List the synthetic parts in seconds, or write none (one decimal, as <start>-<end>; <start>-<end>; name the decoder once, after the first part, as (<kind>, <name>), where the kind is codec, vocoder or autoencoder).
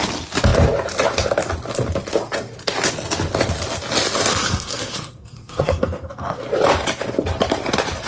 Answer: 4.3-6.5 (codec, SNAC)